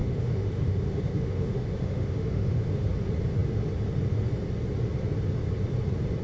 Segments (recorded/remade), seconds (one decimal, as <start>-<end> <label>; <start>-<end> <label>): 0.0-2.9 remade; 2.9-6.2 recorded